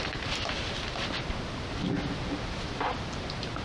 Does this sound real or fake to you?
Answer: real